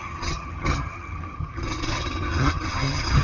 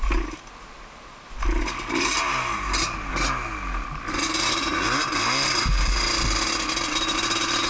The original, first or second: second